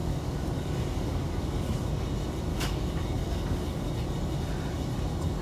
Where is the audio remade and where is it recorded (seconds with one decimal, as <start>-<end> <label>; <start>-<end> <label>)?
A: 0.0-1.9 remade; 1.9-2.5 recorded; 2.5-3.9 remade; 3.9-5.4 recorded